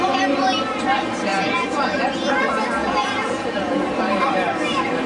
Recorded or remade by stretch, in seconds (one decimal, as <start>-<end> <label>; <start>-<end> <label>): 0.0-1.3 recorded; 1.3-2.1 remade; 2.1-2.8 recorded; 2.8-3.8 remade; 3.8-5.1 recorded

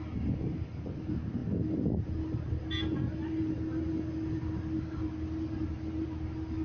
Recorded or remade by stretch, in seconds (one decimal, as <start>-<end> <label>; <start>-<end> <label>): 0.0-6.6 recorded

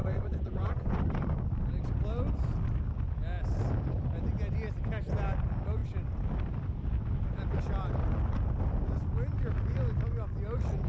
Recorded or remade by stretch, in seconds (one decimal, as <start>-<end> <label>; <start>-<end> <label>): 0.0-1.0 remade; 1.0-10.9 recorded

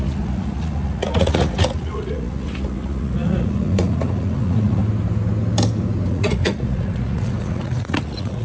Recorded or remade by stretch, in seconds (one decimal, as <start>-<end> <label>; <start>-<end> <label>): 0.0-4.8 remade; 4.8-6.1 recorded; 6.1-8.4 remade

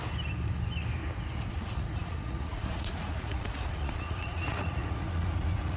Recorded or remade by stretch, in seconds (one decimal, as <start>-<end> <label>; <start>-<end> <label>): 0.0-1.5 recorded; 1.5-5.8 remade

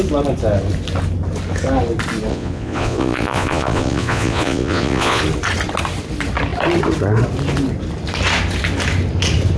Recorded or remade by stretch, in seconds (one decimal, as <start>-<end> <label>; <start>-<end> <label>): 0.0-2.3 recorded; 2.3-5.2 remade; 5.2-9.6 recorded